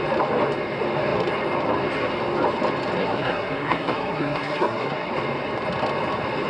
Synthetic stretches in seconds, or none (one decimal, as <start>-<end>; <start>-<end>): 3.0-5.1